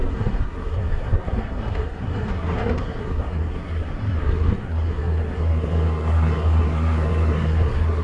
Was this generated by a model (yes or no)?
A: yes